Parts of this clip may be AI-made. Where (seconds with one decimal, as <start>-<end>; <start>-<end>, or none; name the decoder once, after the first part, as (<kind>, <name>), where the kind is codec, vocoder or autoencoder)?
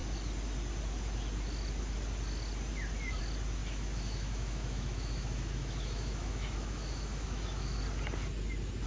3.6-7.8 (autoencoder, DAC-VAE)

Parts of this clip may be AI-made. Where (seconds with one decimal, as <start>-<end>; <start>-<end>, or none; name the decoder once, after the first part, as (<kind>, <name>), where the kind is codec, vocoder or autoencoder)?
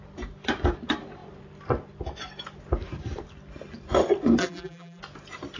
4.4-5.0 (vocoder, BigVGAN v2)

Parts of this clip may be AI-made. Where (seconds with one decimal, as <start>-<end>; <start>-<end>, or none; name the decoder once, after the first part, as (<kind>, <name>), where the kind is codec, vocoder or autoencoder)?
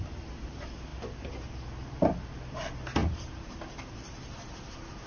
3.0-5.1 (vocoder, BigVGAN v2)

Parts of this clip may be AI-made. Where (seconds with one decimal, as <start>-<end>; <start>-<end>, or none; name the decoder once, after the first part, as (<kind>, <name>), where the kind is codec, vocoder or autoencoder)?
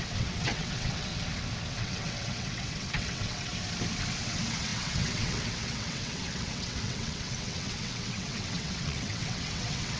0.0-1.1 (vocoder, WaveNeXt); 1.7-3.5; 4.1-10.0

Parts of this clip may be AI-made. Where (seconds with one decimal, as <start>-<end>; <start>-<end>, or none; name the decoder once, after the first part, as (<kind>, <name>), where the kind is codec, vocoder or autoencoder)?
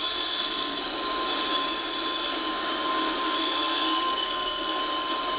0.0-0.8 (codec, SNAC); 3.4-4.8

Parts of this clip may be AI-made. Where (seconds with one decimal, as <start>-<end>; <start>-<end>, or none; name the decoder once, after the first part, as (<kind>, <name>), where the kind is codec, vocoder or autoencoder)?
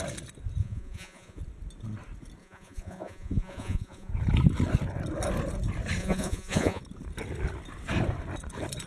0.6-1.4 (vocoder, Vocos); 2.4-4.1; 6.0-6.8